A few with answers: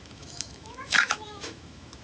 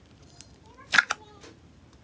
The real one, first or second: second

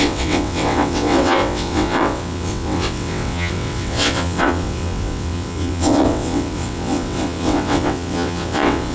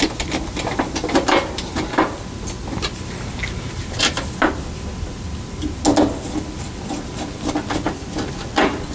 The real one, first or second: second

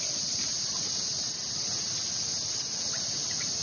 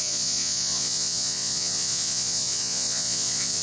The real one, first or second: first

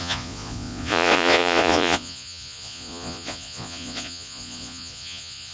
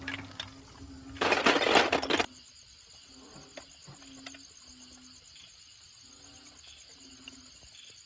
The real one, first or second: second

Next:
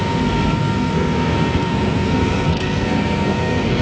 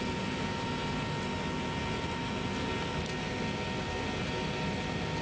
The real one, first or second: second